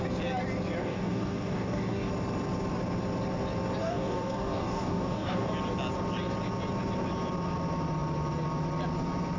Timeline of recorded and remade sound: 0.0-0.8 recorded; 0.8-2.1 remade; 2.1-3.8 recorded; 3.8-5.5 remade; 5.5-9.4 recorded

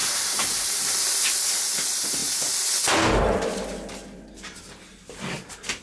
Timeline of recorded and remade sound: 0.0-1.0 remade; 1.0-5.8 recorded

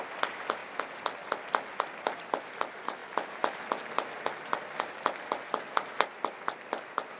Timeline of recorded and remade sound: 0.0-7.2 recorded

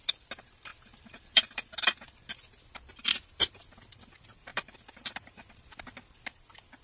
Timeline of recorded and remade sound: 0.0-0.7 recorded; 0.7-1.6 remade; 1.6-4.5 recorded; 4.5-5.8 remade; 5.8-6.8 recorded

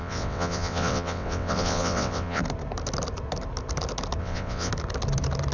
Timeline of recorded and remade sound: 0.0-2.4 remade; 2.4-4.2 recorded; 4.2-4.7 remade; 4.7-5.5 recorded